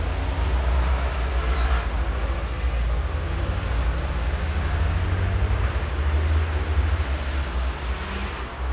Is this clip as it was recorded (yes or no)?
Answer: yes